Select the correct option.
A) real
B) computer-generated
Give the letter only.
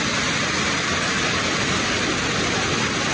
A